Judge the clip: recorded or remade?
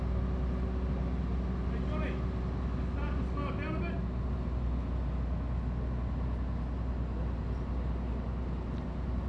recorded